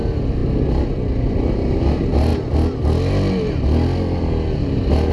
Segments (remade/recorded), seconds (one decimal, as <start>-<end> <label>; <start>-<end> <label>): 0.0-5.1 recorded